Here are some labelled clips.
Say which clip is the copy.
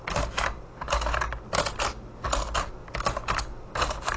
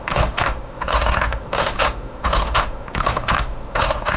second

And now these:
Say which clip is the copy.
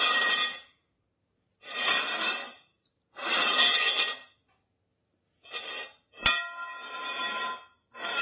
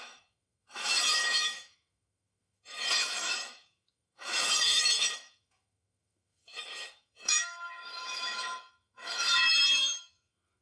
second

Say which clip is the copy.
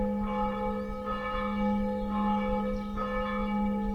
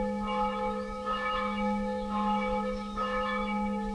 second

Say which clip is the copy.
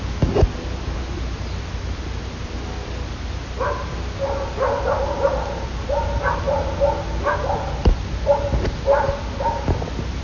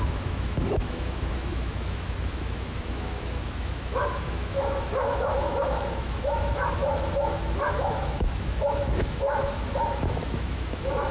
second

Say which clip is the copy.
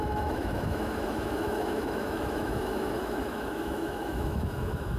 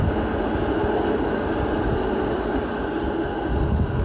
first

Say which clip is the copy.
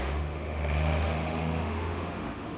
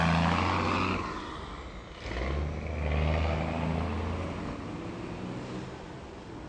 first